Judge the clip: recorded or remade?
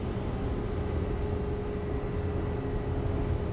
recorded